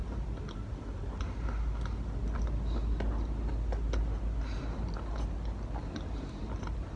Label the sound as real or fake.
real